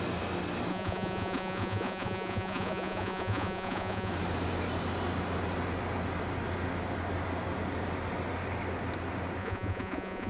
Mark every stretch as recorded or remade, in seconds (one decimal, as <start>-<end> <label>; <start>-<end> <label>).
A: 0.0-0.7 recorded; 0.7-4.1 remade; 4.1-9.4 recorded; 9.4-10.3 remade